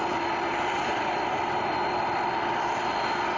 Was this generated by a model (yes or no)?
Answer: no